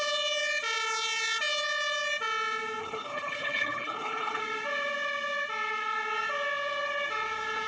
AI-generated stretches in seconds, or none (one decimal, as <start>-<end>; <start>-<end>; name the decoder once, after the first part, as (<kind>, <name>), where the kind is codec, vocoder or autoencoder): 2.8-4.4 (codec, HILCodec)